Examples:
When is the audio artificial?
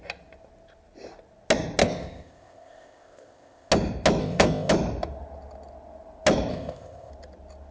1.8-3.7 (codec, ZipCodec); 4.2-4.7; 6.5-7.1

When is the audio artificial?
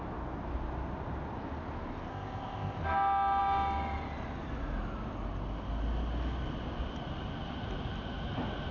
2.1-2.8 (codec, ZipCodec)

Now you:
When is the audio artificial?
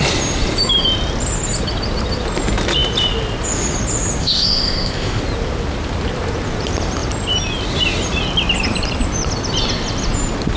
4.2-5.2 (codec, ZipCodec)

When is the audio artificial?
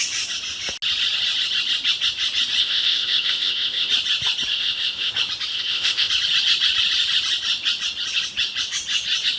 2.6-3.9 (codec, ZipCodec); 4.5-5.1; 5.5-6.1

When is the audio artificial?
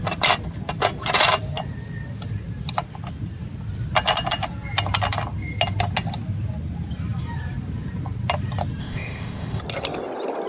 8.8-9.6 (codec, ZipCodec)